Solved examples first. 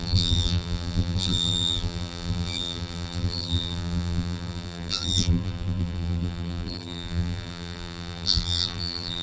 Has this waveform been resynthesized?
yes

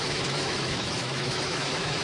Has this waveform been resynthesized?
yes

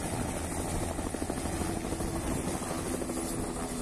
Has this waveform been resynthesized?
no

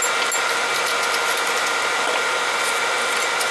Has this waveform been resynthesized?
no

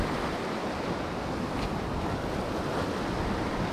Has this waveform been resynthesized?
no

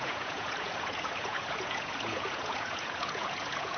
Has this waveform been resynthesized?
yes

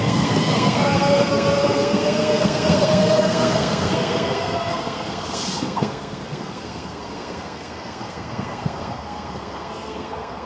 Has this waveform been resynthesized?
yes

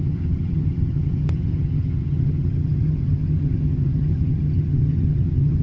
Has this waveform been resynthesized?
yes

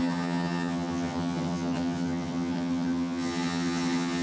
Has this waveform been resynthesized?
yes